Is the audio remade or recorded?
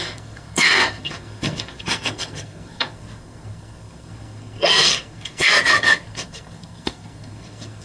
remade